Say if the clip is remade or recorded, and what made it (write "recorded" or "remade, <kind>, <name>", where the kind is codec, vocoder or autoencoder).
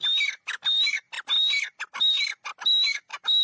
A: recorded